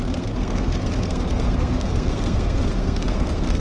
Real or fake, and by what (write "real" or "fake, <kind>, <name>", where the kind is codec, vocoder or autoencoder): fake, codec, SNAC